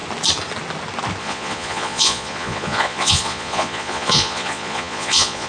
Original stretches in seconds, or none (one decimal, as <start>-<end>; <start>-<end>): 0.0-1.2